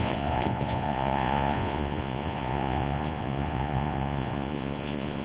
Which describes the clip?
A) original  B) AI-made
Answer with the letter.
B